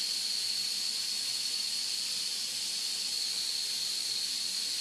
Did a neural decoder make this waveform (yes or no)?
no